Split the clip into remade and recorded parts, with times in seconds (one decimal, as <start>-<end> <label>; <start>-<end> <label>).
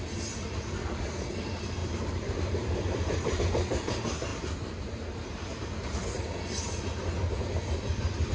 0.0-1.8 recorded; 1.8-3.4 remade; 3.4-8.3 recorded